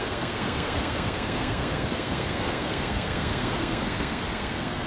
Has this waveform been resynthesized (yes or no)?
yes